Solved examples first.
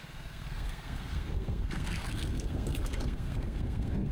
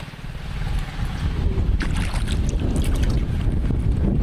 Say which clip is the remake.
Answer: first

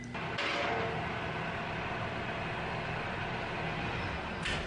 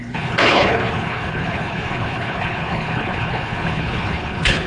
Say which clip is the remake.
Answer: second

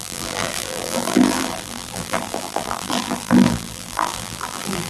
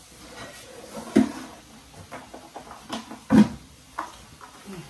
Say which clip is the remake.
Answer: first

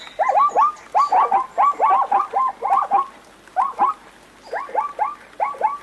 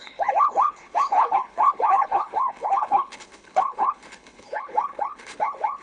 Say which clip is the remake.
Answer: second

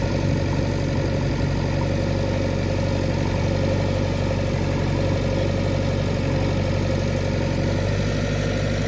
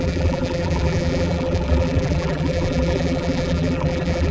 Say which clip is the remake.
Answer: second